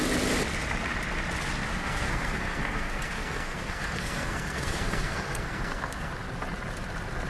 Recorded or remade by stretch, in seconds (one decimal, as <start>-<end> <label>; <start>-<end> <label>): 0.0-1.7 recorded; 1.7-6.1 remade; 6.1-7.3 recorded